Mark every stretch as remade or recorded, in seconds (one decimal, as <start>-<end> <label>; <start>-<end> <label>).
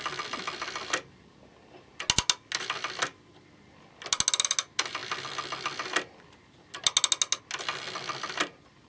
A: 0.0-8.9 recorded